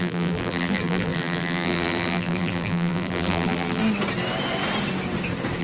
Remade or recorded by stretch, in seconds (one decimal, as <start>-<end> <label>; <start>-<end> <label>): 0.0-3.8 remade; 3.8-5.6 recorded